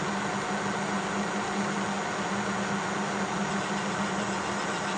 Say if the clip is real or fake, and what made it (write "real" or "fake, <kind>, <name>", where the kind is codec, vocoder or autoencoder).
real